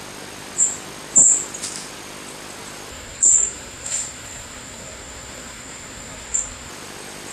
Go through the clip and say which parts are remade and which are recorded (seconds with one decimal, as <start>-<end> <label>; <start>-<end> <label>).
0.0-2.9 recorded; 2.9-6.7 remade; 6.7-7.3 recorded